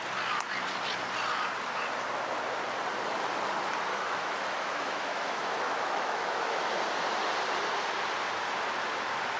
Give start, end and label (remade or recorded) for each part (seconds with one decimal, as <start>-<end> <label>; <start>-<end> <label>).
0.0-3.9 recorded; 3.9-6.7 remade; 6.7-9.4 recorded